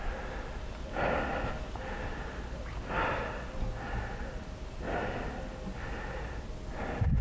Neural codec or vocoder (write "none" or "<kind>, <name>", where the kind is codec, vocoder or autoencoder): none